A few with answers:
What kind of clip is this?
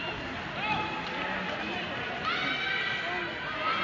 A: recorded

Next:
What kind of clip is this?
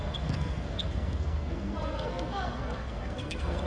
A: remade